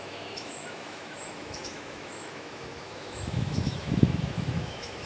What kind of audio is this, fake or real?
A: fake